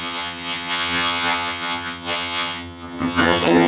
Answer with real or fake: fake